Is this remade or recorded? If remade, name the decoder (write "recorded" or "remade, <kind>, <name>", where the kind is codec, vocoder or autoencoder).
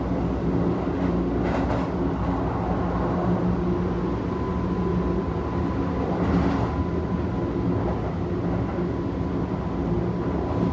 recorded